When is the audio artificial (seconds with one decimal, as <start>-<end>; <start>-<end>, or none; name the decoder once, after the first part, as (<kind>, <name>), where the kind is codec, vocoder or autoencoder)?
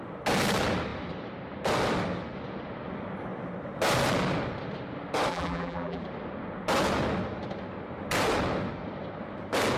5.3-6.0 (vocoder, BigVGAN v2)